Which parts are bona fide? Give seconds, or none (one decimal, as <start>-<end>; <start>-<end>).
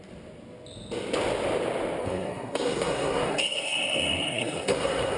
0.0-2.0